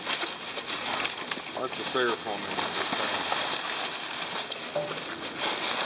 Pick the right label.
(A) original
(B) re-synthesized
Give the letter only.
A